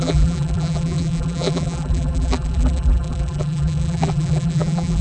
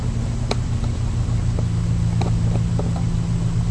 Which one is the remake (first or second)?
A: first